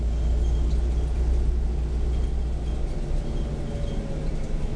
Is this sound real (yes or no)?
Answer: yes